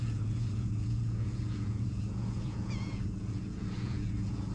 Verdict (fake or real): fake